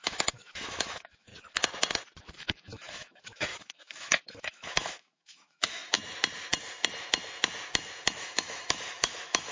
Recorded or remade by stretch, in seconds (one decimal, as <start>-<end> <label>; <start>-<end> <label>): 0.0-1.3 remade; 1.3-2.3 recorded; 2.3-5.8 remade; 5.8-8.1 recorded; 8.1-9.5 remade